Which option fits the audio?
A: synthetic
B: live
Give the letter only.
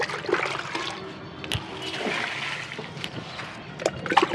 B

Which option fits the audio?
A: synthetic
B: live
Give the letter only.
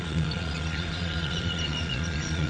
A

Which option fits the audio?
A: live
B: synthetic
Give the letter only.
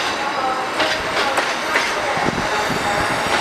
A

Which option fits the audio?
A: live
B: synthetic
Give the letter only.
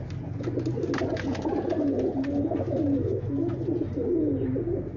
A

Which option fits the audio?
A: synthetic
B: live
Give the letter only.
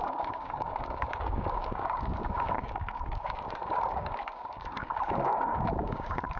A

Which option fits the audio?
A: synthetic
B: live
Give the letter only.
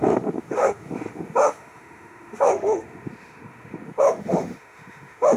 A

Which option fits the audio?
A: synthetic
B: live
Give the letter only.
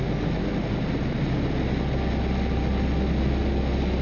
B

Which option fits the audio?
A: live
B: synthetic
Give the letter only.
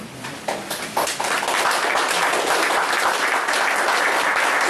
A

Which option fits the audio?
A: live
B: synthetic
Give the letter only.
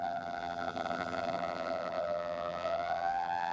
B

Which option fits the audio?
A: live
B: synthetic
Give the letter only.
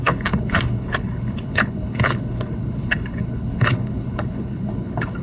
B